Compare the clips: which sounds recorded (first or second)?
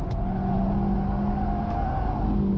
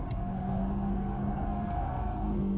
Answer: first